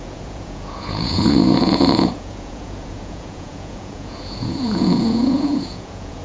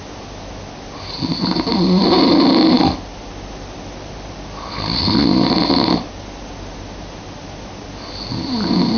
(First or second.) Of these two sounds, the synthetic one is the first